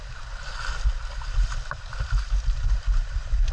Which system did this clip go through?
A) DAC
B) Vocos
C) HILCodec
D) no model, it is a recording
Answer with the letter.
D